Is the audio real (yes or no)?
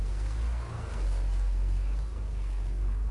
no